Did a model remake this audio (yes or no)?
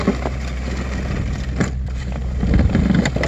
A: no